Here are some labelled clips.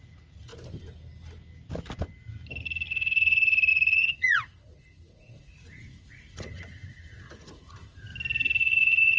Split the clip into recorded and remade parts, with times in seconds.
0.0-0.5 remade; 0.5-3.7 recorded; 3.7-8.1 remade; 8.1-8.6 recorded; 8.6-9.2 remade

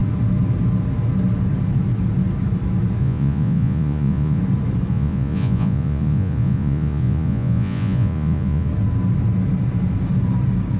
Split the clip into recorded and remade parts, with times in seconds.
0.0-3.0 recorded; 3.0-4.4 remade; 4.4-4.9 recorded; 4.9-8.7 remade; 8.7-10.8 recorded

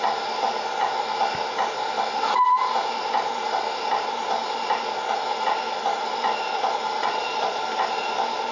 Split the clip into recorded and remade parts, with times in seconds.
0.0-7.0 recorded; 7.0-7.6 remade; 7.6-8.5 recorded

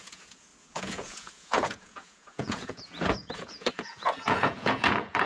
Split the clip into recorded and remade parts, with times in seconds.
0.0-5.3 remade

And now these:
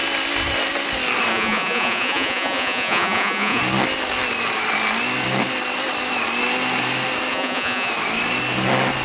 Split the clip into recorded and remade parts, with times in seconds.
0.0-1.3 recorded; 1.3-3.6 remade; 3.6-7.3 recorded; 7.3-7.9 remade; 7.9-9.0 recorded